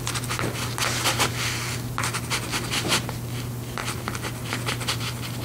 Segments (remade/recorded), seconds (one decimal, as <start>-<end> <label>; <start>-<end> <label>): 0.0-5.4 recorded